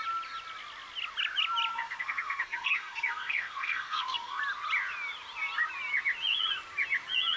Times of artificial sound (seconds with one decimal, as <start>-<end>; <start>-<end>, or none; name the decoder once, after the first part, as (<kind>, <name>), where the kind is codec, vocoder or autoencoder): 1.7-4.4 (codec, SNAC)